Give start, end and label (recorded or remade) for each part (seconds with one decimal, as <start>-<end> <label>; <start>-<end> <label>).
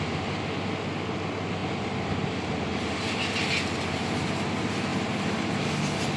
0.0-4.9 recorded; 4.9-5.5 remade; 5.5-6.2 recorded